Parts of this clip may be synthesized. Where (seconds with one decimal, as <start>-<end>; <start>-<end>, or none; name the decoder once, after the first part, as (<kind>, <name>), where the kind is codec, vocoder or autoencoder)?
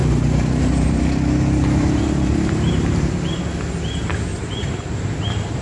0.0-3.4 (vocoder, BigVGAN v2); 4.3-5.6